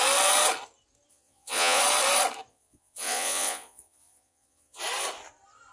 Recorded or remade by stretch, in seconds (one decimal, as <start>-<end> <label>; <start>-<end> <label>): 0.0-1.1 recorded; 1.1-1.8 remade; 1.8-2.5 recorded; 2.5-4.8 remade; 4.8-5.7 recorded